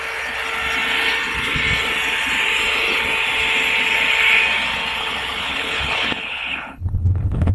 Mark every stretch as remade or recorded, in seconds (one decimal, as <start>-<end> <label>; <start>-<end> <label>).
0.0-5.0 recorded; 5.0-7.5 remade